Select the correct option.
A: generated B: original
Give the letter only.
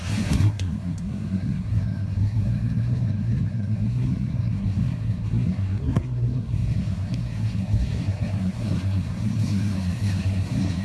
A